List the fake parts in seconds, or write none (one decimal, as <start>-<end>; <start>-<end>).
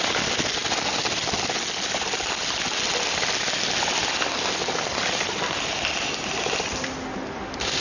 none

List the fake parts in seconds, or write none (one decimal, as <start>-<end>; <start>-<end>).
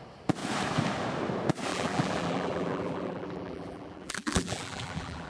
1.7-5.3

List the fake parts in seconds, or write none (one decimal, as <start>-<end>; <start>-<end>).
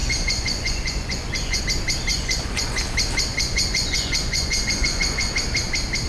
0.0-1.6; 2.1-2.8; 3.3-5.3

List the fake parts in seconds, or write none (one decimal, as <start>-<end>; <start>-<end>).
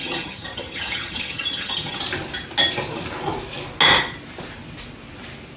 0.0-2.0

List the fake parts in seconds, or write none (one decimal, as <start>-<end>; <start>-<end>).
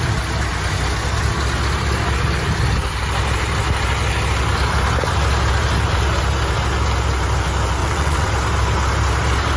7.8-8.3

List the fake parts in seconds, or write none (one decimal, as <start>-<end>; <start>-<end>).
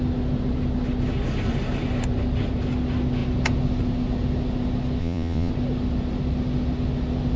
5.0-5.5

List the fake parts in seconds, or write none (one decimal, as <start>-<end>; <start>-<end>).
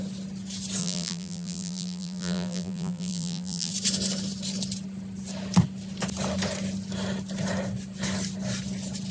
0.8-3.7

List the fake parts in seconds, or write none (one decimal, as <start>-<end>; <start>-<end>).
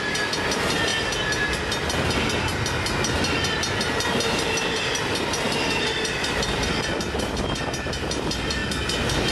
0.0-0.9; 5.8-6.7; 7.2-8.6